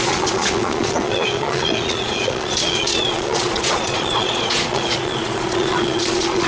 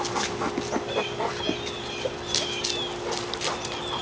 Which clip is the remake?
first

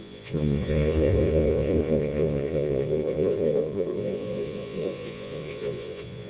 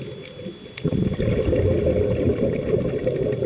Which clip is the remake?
first